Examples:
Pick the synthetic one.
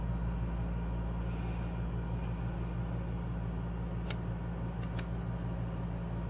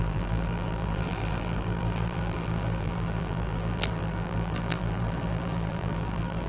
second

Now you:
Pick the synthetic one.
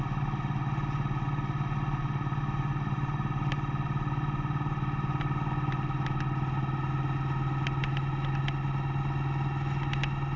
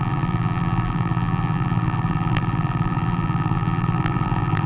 second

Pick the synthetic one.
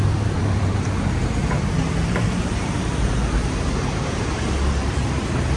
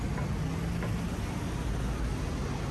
first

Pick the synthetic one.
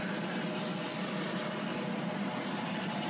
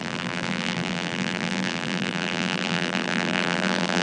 second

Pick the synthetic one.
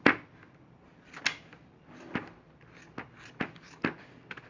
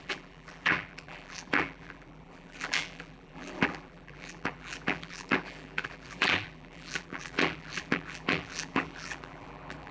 second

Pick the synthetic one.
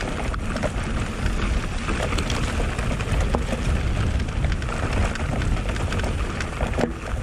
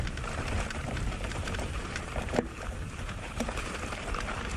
second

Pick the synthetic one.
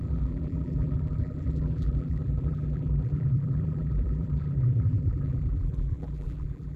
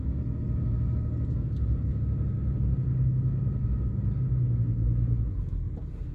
first